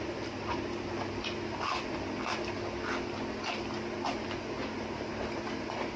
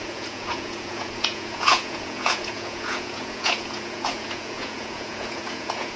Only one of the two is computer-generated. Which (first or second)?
second